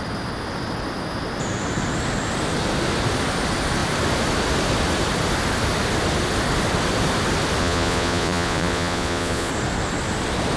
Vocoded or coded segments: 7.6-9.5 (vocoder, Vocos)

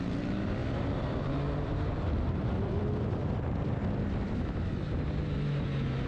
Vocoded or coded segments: 0.6-4.3 (vocoder, BigVGAN v2)

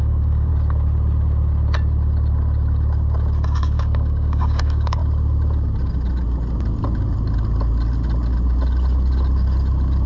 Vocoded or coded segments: 0.0-0.5 (codec, DAC); 3.6-5.0

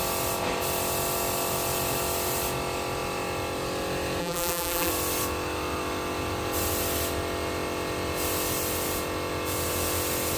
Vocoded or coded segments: 4.2-4.9 (vocoder, BigVGAN v2)

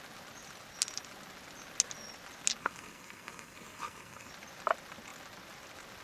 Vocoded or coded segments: 2.6-4.3 (codec, SNAC)